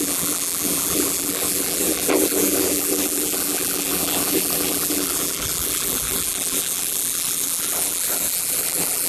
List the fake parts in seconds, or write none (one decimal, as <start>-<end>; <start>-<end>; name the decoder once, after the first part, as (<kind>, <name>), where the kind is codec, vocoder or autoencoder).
0.0-9.1 (vocoder, BigVGAN v2)